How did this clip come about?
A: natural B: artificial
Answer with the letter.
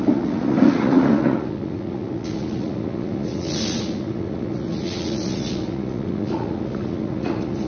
B